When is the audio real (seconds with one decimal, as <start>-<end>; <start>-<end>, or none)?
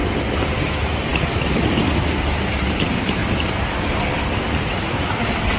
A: 0.0-0.6; 3.2-4.6